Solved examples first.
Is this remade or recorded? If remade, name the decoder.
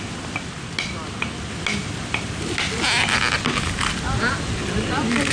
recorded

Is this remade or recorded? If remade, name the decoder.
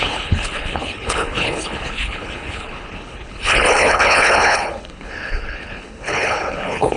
remade, codec, HILCodec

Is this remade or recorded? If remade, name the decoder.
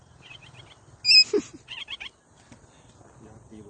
recorded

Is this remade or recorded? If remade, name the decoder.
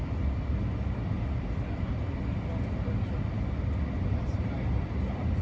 recorded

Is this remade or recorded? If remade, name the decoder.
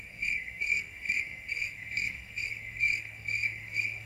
remade, codec, SNAC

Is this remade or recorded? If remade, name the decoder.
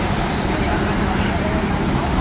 remade, vocoder, BigVGAN v2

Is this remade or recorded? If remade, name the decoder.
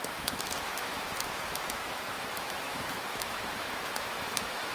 remade, autoencoder, DAC-VAE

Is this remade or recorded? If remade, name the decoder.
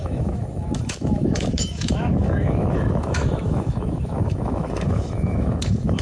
remade, autoencoder, DAC-VAE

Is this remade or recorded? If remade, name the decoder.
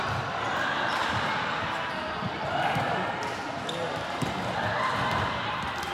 recorded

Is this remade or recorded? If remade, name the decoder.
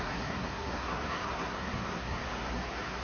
remade, codec, SNAC